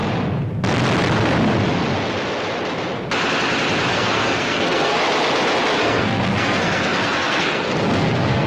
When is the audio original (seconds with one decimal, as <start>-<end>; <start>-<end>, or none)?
0.0-3.9; 5.0-5.8